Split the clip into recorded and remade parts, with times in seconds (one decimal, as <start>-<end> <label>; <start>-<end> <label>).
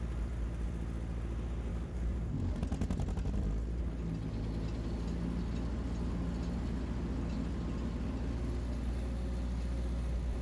0.0-1.7 recorded; 1.7-2.6 remade; 2.6-10.4 recorded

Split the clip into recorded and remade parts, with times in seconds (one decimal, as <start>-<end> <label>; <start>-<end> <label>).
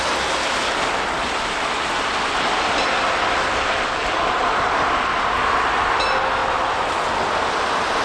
0.0-8.0 recorded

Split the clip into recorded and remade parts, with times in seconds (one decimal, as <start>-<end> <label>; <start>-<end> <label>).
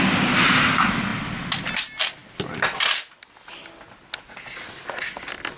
0.0-5.6 recorded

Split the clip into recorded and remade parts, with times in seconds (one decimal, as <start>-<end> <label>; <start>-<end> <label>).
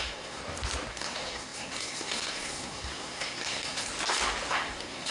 0.0-0.4 remade; 0.4-0.9 recorded; 0.9-3.9 remade; 3.9-4.5 recorded; 4.5-5.1 remade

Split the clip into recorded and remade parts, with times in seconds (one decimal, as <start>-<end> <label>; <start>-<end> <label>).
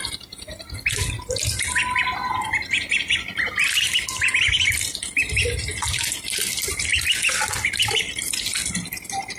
0.0-9.4 recorded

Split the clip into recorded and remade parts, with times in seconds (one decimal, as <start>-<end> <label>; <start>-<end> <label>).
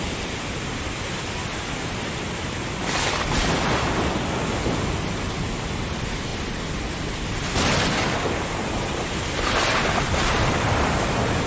0.0-11.5 recorded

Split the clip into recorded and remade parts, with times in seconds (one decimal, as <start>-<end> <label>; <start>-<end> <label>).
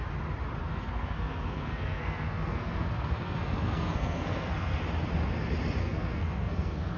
0.0-0.6 recorded; 0.6-4.8 remade; 4.8-5.8 recorded; 5.8-7.0 remade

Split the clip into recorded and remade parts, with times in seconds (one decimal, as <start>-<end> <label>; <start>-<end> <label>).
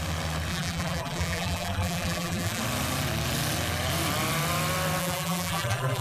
0.0-0.5 recorded; 0.5-2.6 remade; 2.6-5.0 recorded; 5.0-6.0 remade